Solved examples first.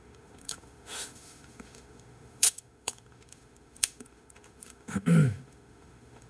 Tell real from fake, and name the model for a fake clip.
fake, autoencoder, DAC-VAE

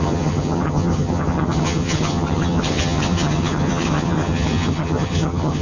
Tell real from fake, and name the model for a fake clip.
fake, vocoder, HiFi-GAN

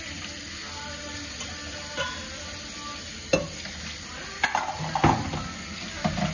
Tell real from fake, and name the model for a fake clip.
real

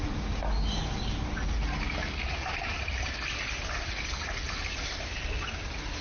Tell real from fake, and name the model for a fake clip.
real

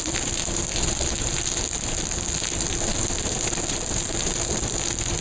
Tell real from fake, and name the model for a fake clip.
real